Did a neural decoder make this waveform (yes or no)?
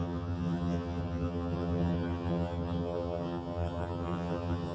yes